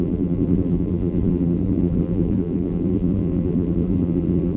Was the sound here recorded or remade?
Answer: remade